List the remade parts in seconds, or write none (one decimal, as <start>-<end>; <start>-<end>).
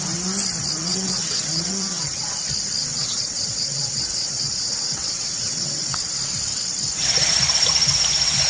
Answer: 0.8-2.2; 2.9-6.1